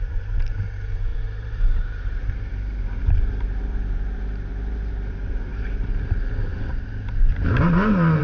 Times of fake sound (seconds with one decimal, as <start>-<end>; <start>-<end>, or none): 0.0-8.2